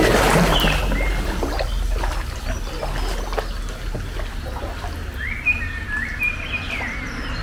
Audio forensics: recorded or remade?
recorded